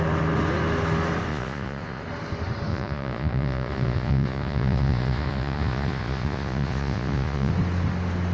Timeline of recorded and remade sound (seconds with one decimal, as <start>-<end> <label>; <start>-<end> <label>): 0.0-1.3 recorded; 1.3-2.0 remade; 2.0-2.7 recorded; 2.7-7.5 remade; 7.5-8.3 recorded